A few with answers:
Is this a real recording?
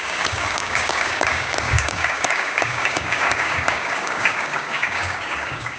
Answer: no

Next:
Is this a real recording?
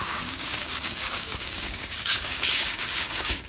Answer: no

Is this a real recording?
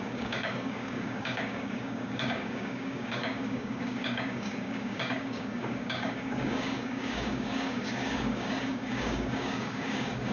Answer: no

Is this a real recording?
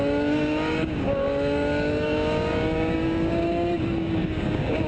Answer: no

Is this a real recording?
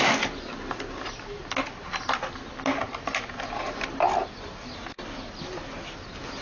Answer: yes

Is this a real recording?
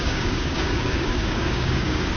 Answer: no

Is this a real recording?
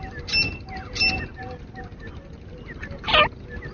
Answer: yes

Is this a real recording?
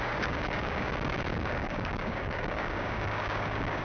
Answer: no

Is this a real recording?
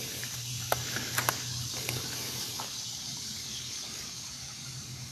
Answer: no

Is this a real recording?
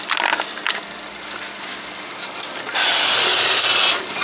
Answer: yes